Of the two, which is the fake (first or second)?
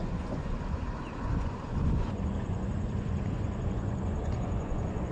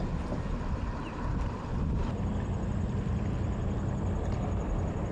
first